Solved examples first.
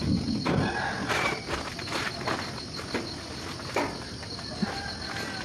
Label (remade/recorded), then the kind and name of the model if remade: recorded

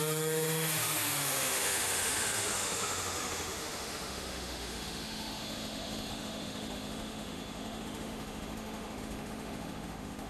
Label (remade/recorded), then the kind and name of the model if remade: remade, autoencoder, DAC-VAE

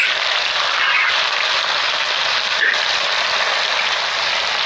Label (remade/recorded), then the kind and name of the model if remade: recorded